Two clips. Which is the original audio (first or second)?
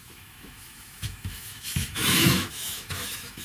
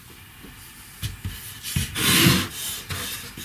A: second